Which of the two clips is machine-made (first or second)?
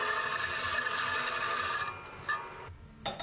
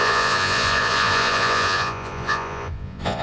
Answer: second